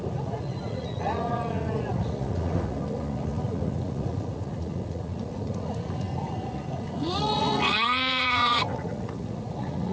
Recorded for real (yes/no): no